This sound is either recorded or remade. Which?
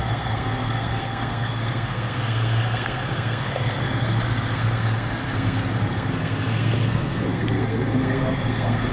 remade